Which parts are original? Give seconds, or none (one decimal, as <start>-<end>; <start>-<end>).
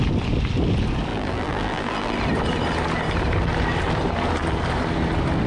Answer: 0.0-1.1; 2.2-5.5